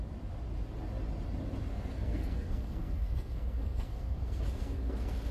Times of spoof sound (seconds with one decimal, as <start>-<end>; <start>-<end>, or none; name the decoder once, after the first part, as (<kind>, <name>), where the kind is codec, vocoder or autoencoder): 1.7-5.3 (codec, SNAC)